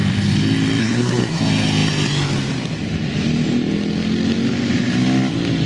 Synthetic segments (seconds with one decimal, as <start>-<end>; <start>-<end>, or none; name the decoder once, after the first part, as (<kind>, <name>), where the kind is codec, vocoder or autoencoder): 0.8-1.4 (codec, SNAC)